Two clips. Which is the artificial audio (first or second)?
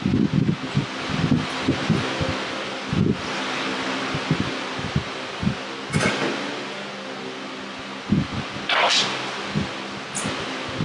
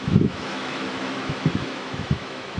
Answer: second